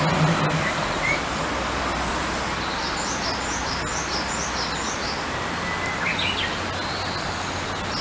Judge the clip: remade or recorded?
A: recorded